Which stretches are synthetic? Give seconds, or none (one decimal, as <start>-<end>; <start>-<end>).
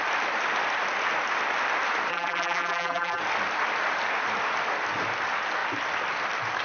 2.1-3.2